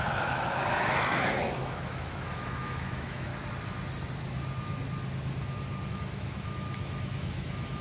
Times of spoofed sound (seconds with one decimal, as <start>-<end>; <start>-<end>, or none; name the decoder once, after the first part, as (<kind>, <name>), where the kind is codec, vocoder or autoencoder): 0.0-3.3 (autoencoder, DAC-VAE); 5.9-7.8